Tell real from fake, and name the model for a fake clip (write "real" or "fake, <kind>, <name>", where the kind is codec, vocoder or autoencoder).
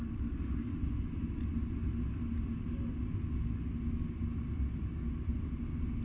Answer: real